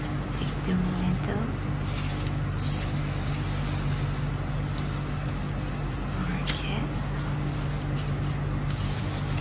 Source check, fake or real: real